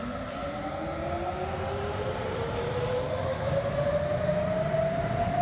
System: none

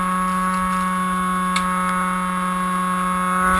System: none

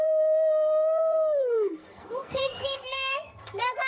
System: codec, SNAC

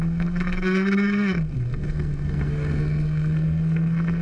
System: codec, SNAC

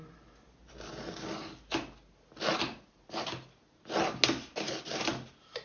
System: none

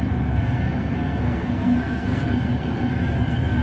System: codec, SNAC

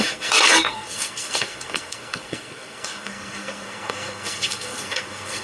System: codec, SNAC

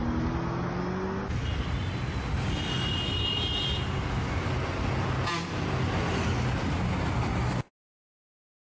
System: none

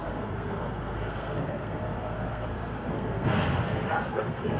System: codec, SNAC